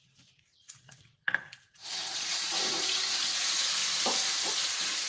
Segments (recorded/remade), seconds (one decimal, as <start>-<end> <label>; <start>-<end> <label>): 0.0-3.8 remade; 3.8-4.6 recorded; 4.6-5.1 remade